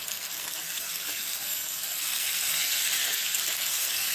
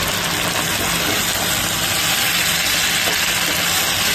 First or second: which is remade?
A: first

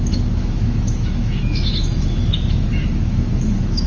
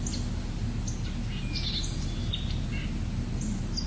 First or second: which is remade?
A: first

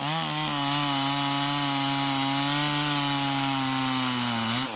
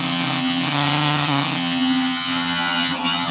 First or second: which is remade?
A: second